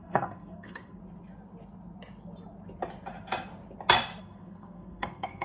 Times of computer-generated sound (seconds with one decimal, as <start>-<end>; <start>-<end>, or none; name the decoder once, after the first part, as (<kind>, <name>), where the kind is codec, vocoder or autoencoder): 0.0-1.0 (codec, SNAC); 4.2-5.4